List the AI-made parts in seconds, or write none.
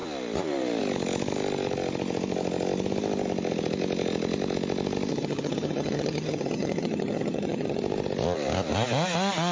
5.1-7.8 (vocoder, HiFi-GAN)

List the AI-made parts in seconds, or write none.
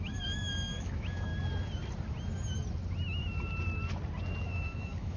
0.0-1.3 (autoencoder, DAC-VAE); 4.4-5.2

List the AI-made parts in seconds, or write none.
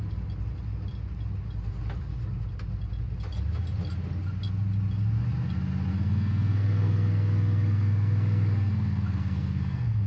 5.9-10.1 (codec, SNAC)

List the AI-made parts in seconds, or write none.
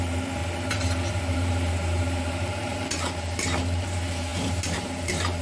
0.0-0.4 (vocoder, BigVGAN v2); 1.1-5.4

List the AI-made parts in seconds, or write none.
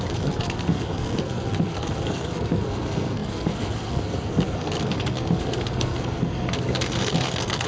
0.0-7.7 (codec, SNAC)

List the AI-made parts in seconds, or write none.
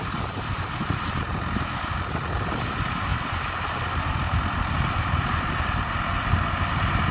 none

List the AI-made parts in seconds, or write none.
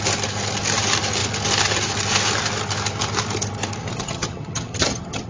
3.8-5.3 (vocoder, HiFi-GAN)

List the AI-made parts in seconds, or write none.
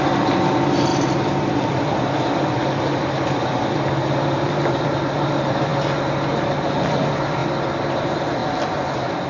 0.0-5.7 (vocoder, BigVGAN v2); 6.4-7.4; 7.9-9.3